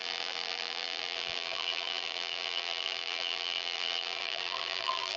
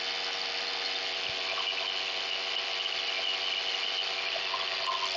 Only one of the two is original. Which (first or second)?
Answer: second